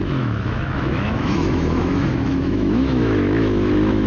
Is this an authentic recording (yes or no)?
no